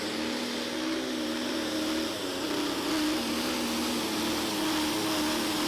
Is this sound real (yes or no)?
yes